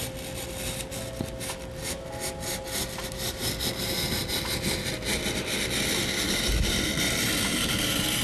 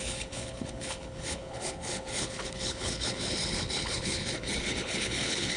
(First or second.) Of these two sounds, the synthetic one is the second